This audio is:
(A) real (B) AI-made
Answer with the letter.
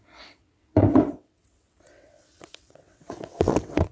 B